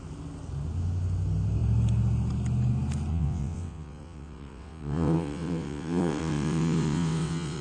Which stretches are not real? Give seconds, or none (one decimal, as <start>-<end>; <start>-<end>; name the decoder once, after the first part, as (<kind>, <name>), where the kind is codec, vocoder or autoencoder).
3.1-7.6 (vocoder, WaveNeXt)